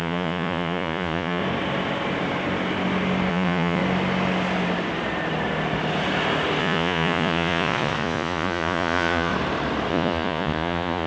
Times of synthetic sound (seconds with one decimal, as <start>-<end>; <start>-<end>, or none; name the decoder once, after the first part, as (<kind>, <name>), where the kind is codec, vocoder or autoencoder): 0.0-1.4 (vocoder, Vocos); 3.3-3.8; 6.6-9.3; 9.9-11.1